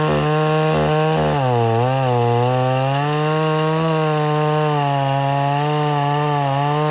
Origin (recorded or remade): recorded